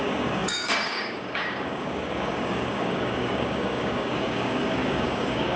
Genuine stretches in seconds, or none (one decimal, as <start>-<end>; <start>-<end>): none